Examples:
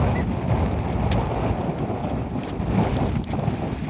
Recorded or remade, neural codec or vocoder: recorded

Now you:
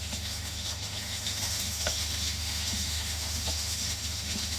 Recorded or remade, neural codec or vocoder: remade, autoencoder, DAC-VAE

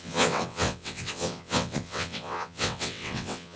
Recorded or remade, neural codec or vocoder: remade, vocoder, WaveNeXt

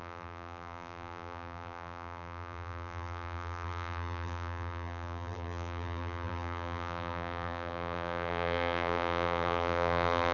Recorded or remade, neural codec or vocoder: remade, vocoder, BigVGAN v2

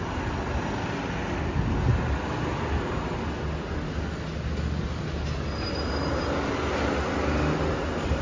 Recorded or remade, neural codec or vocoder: recorded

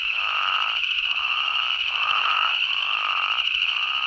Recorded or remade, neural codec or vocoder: remade, autoencoder, DAC-VAE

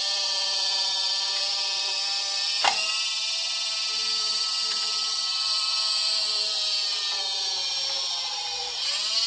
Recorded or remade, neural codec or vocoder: remade, vocoder, BigVGAN v2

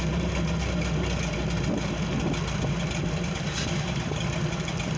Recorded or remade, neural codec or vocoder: recorded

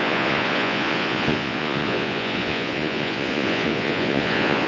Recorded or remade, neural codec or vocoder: remade, vocoder, Vocos